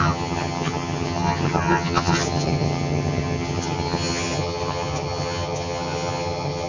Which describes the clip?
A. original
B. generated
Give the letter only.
B